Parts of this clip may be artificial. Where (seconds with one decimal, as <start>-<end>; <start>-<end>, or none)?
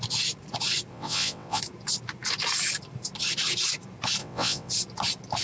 0.9-1.6; 4.2-4.7